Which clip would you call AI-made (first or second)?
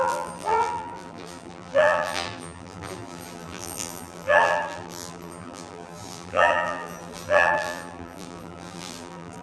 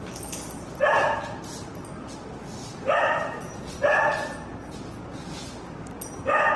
first